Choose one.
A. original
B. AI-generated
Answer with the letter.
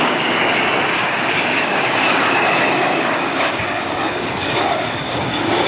B